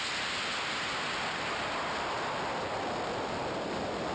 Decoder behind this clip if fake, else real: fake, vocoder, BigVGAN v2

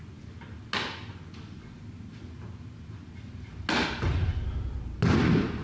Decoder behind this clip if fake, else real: real